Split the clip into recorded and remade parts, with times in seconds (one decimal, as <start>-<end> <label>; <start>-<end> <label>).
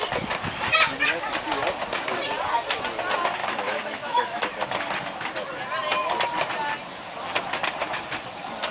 0.0-3.4 recorded; 3.4-4.4 remade; 4.4-8.7 recorded